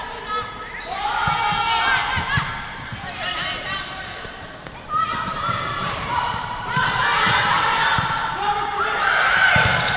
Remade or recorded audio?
remade